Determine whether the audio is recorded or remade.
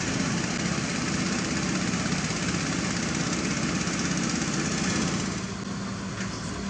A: recorded